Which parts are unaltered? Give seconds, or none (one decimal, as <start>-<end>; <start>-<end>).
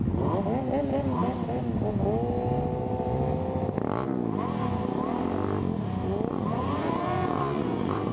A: 0.0-6.3